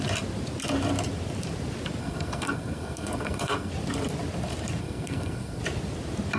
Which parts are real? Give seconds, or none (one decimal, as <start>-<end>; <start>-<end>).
0.0-2.0; 3.7-4.8; 5.6-6.4